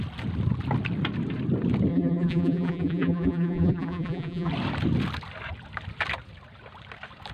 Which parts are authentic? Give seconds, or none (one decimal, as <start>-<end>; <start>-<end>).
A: 0.0-1.9; 4.5-7.3